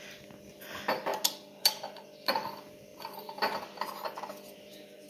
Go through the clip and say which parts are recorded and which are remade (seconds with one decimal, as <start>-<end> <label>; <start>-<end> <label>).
0.0-5.1 recorded

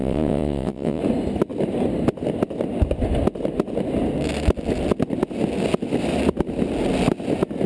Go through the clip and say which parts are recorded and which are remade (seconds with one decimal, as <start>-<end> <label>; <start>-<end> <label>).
0.0-1.0 remade; 1.0-7.7 recorded

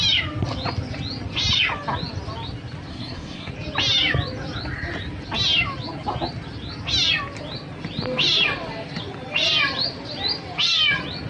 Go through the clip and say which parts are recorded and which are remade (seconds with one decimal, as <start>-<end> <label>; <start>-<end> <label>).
0.0-2.9 recorded; 2.9-3.5 remade; 3.5-11.3 recorded

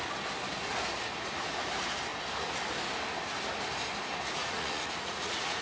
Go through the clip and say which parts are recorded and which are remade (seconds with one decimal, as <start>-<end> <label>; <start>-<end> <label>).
0.0-4.4 recorded; 4.4-5.6 remade